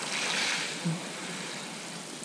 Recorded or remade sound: recorded